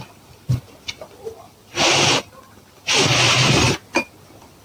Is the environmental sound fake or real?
real